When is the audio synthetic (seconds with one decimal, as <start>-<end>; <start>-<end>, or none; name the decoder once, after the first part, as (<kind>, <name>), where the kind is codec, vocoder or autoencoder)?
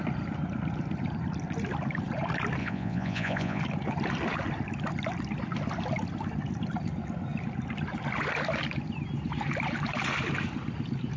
2.6-3.6 (vocoder, Vocos)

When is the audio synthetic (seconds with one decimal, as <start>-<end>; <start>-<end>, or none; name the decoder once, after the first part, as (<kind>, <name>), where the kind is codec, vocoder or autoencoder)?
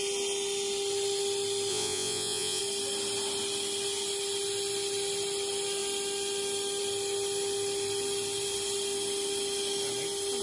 1.7-2.6 (vocoder, Vocos)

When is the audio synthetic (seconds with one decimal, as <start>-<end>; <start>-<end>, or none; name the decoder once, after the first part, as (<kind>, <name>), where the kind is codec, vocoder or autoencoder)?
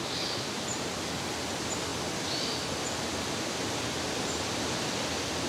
none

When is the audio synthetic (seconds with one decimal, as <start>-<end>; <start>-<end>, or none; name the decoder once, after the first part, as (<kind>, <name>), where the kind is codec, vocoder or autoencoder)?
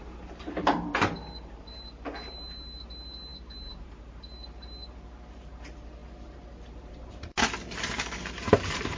0.0-9.0 (vocoder, BigVGAN v2)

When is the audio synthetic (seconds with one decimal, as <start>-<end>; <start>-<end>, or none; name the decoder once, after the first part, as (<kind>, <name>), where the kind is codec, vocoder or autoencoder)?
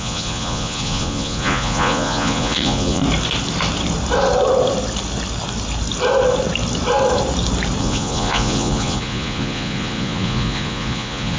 0.0-3.0 (vocoder, Vocos); 7.8-11.4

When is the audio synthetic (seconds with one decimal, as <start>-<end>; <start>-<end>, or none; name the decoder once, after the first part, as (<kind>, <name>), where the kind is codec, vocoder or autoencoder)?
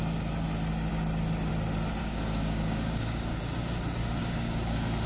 2.0-3.4 (codec, DAC); 4.2-5.1